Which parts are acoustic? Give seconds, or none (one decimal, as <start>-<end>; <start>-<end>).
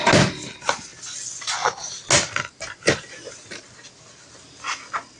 0.0-5.2